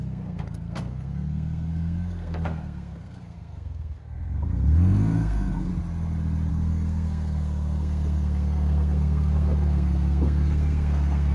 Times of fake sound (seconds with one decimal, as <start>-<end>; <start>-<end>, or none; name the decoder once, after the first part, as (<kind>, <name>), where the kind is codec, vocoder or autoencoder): 0.0-5.7 (codec, SNAC); 6.5-11.3